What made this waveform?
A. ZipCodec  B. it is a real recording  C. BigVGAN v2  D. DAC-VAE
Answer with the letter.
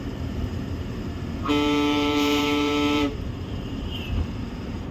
C